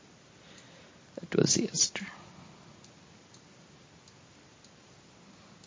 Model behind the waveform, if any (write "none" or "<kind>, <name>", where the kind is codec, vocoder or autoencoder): none